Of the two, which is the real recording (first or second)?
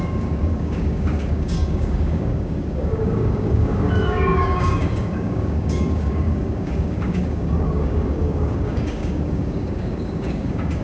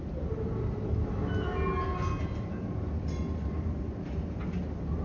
second